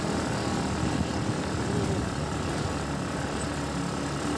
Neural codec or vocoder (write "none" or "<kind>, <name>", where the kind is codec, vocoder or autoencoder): none